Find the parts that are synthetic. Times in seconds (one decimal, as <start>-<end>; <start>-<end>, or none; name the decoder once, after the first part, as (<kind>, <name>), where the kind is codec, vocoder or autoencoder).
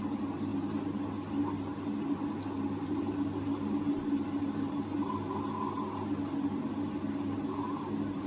none